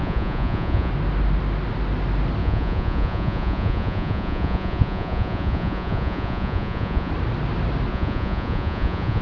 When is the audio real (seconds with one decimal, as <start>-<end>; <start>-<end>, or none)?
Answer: 0.9-2.4; 7.1-7.9